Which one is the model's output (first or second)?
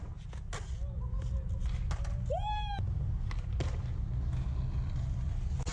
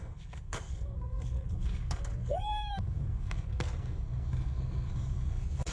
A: second